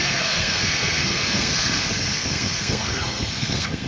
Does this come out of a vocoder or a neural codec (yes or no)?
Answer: yes